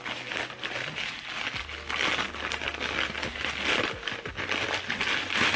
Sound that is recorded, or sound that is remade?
recorded